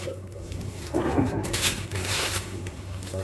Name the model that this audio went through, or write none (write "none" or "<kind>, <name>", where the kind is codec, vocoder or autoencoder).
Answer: codec, SNAC